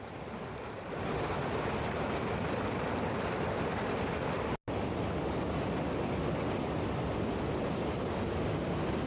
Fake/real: real